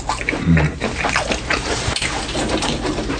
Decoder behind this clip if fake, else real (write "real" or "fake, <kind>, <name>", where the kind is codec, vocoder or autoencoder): fake, vocoder, BigVGAN v2